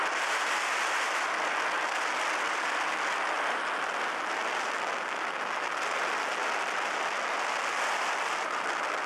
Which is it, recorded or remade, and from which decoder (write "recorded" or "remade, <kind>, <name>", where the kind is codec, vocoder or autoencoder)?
recorded